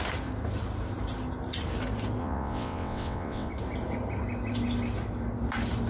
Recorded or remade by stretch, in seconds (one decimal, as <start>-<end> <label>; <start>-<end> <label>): 0.0-2.2 recorded; 2.2-3.5 remade; 3.5-5.9 recorded